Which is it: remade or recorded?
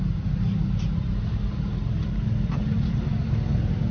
recorded